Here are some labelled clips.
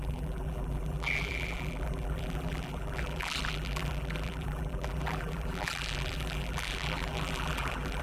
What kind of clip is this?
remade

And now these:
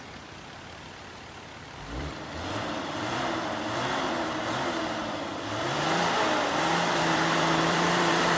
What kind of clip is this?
remade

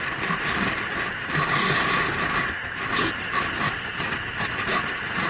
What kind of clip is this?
remade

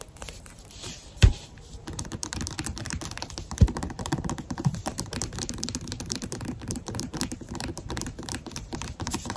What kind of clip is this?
remade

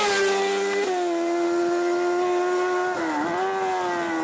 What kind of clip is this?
recorded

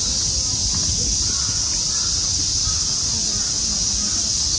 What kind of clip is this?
recorded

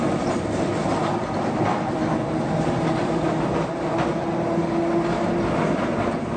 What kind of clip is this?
recorded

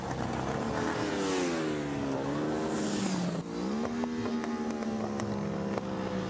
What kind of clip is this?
recorded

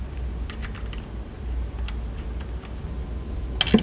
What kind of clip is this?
recorded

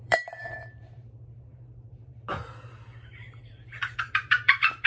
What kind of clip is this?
remade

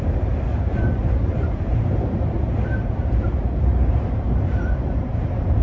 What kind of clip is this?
remade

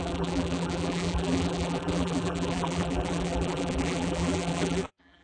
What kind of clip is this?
remade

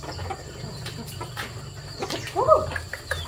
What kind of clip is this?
recorded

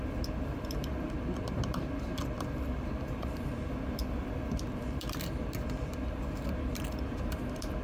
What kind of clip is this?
remade